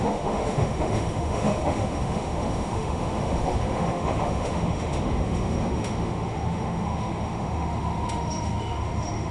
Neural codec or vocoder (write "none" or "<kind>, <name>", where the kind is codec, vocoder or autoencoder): autoencoder, DAC-VAE